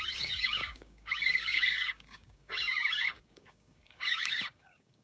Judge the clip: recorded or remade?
remade